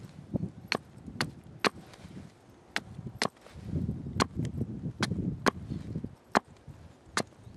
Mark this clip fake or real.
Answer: real